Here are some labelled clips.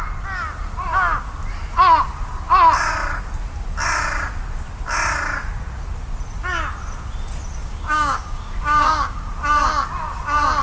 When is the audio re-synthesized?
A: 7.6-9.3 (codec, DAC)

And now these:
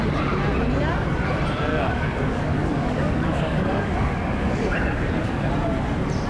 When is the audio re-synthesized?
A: 1.7-5.5 (codec, DAC)

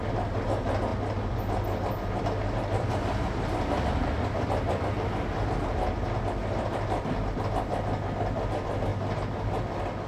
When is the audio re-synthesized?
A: none

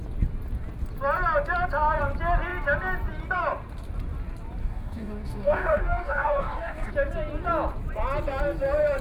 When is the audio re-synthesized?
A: 4.6-6.9 (codec, DAC)

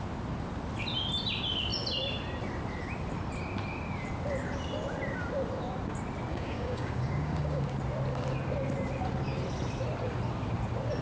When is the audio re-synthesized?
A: 6.3-7.6 (codec, DAC)